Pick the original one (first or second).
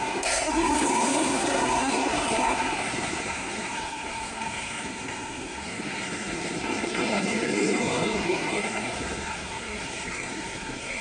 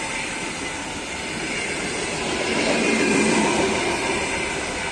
second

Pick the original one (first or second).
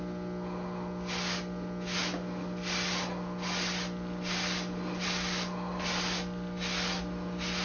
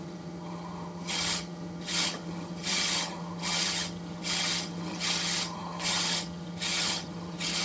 first